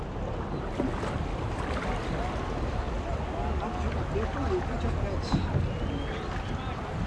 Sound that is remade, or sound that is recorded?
recorded